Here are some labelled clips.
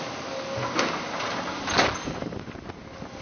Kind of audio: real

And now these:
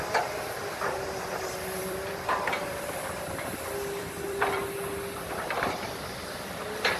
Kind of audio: fake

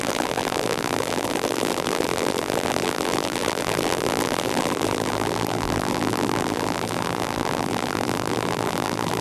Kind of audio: fake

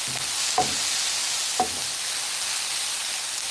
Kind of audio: real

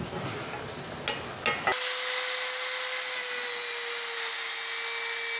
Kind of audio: real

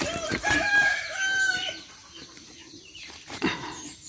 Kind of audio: fake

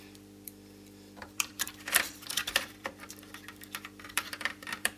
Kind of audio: fake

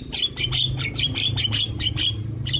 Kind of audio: fake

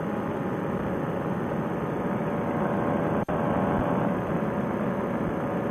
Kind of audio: real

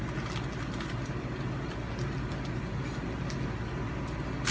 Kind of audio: real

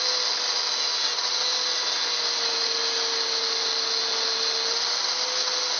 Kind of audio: real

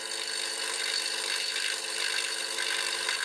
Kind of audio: fake